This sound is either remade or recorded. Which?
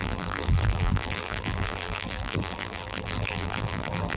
remade